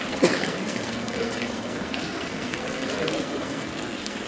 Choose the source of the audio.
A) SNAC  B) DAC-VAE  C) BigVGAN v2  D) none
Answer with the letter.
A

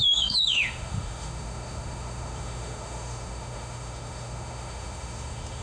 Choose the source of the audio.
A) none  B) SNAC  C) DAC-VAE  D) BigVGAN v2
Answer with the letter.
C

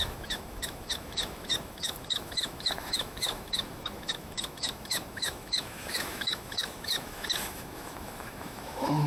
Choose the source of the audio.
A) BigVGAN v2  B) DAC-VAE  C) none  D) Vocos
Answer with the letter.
B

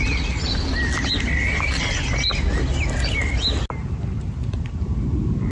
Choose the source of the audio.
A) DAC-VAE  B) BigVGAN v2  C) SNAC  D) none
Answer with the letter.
D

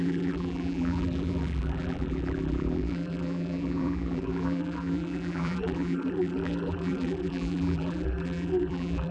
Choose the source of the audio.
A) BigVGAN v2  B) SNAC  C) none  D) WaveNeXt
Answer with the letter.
A